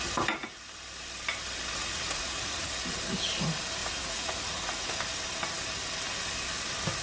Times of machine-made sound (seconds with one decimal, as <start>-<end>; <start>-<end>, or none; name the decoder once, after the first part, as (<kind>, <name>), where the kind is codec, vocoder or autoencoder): 1.8-2.7 (vocoder, Vocos); 3.8-5.0

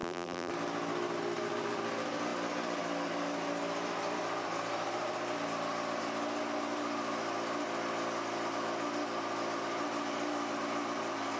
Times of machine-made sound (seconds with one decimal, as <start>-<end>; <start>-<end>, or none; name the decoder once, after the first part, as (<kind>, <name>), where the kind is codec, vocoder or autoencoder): 0.0-0.5 (vocoder, BigVGAN v2)

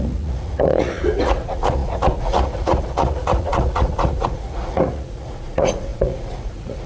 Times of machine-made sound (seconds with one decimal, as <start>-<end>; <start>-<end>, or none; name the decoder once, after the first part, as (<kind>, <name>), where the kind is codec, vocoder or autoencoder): 0.0-6.9 (vocoder, Vocos)

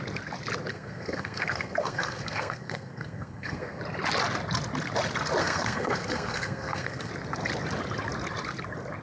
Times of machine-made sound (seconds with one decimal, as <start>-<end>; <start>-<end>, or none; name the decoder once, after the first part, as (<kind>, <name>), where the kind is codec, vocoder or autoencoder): 0.7-3.8 (codec, SNAC); 5.4-7.1

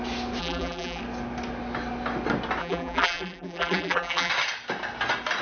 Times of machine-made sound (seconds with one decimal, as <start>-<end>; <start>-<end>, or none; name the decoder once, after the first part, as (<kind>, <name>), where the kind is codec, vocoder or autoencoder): 0.4-1.0 (vocoder, BigVGAN v2); 2.6-4.3

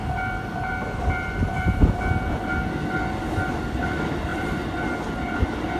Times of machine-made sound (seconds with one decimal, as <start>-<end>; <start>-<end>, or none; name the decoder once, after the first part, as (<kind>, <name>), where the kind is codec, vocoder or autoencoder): 0.0-2.0 (vocoder, BigVGAN v2); 4.3-4.8

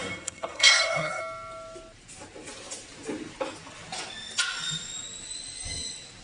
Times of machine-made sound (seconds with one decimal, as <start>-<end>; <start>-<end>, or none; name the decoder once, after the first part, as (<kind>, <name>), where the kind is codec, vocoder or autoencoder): 0.0-1.2 (codec, SNAC)

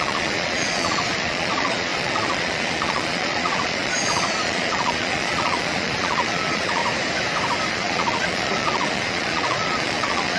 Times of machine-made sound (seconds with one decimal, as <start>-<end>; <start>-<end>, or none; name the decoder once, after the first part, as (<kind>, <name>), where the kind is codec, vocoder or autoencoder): 0.0-6.8 (vocoder, Vocos); 7.7-10.4